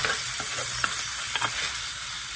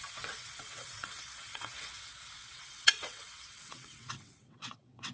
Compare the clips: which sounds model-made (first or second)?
second